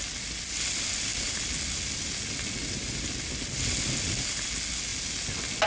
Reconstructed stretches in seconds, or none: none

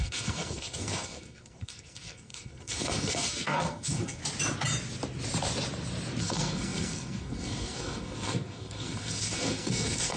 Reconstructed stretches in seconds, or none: 0.0-4.2 (codec, SNAC); 6.2-10.2

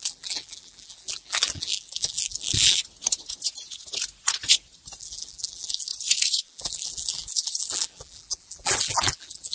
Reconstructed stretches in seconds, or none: 0.0-2.8 (vocoder, BigVGAN v2); 5.0-5.9; 6.4-9.5

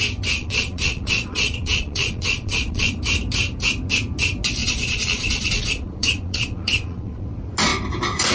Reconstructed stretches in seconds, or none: 0.4-3.0 (vocoder, Vocos); 4.6-7.3

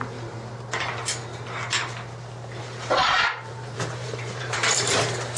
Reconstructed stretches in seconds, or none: 3.0-5.0 (vocoder, BigVGAN v2)

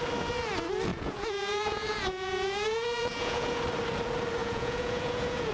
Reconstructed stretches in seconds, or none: 0.9-3.6 (vocoder, Vocos); 4.4-5.5